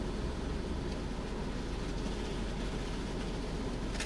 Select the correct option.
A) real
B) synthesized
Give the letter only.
A